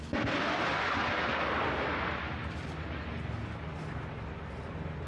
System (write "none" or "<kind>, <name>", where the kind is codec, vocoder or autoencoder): none